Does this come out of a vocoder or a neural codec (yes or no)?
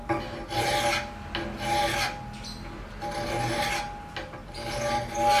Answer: no